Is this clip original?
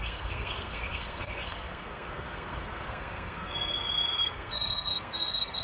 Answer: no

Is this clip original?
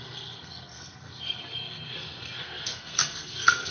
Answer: no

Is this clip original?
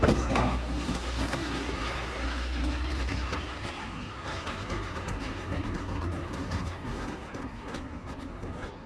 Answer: no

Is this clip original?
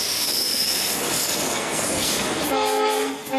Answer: no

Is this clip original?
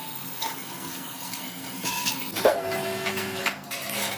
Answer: no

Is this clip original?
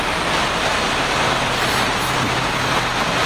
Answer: yes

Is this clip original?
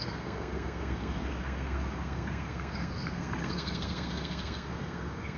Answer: no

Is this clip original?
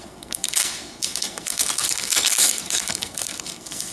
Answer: no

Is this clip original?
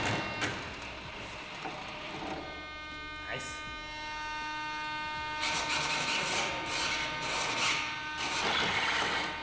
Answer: yes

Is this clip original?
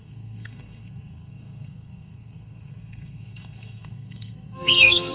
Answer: no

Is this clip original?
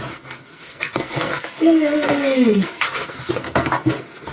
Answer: no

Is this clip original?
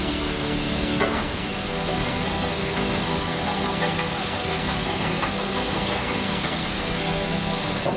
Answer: no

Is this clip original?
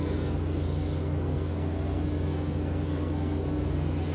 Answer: no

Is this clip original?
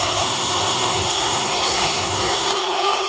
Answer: no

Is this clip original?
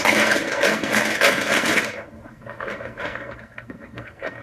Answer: no